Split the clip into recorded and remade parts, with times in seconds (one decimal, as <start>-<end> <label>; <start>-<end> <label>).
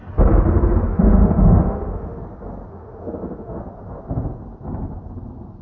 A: 0.0-0.9 recorded; 0.9-2.2 remade; 2.2-2.7 recorded; 2.7-3.6 remade; 3.6-5.6 recorded